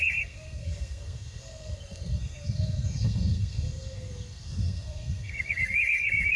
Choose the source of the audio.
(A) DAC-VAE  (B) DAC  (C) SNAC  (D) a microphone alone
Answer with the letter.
C